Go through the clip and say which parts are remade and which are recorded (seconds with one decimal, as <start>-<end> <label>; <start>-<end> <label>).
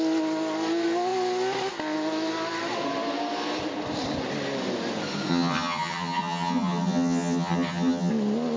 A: 0.0-5.3 recorded; 5.3-8.1 remade; 8.1-8.6 recorded